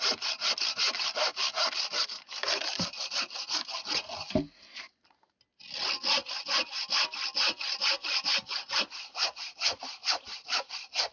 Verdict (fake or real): real